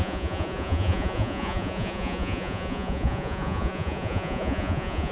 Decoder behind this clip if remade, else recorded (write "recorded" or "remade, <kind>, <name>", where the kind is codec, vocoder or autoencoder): remade, vocoder, Vocos